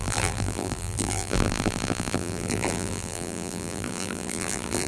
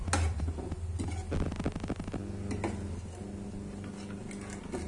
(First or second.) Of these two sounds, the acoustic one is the second